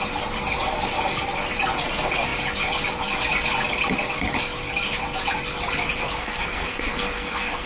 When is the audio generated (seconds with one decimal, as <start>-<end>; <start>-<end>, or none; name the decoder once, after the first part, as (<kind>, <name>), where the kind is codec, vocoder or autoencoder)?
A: 6.2-7.7 (codec, SNAC)